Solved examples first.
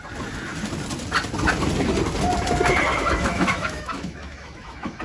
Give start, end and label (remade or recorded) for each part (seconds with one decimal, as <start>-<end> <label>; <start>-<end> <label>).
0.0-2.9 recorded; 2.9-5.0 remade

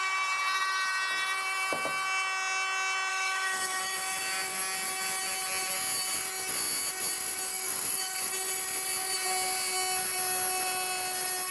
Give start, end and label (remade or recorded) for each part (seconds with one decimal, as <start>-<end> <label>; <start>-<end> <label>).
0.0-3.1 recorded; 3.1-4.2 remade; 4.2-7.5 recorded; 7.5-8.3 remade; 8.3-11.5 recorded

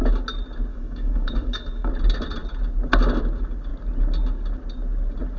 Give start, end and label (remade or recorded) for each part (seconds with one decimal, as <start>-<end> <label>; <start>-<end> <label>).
0.0-0.7 recorded; 0.7-1.9 remade; 1.9-5.4 recorded